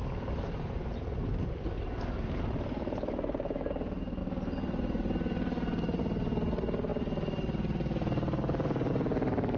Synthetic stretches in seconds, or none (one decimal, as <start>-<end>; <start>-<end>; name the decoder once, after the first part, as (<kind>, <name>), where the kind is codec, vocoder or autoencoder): none